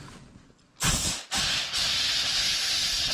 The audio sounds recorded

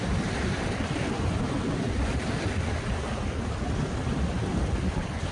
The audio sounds remade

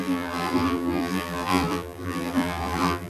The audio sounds remade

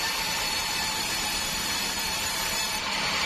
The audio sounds remade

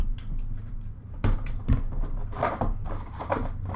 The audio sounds recorded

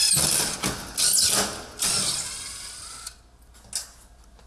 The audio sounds recorded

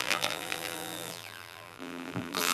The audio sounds remade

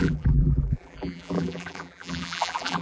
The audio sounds remade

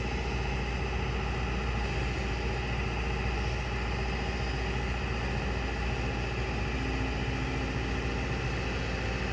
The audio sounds recorded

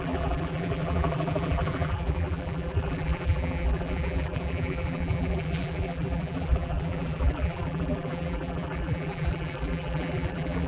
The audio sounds remade